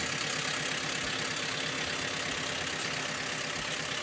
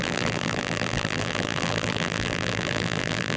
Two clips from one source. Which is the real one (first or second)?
first